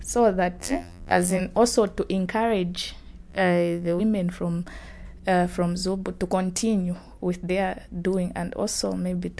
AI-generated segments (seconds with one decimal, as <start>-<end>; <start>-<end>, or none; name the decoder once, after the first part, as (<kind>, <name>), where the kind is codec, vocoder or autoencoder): 0.6-1.4 (vocoder, BigVGAN v2); 3.3-4.0